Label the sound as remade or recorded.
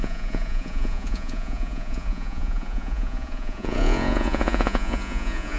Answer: remade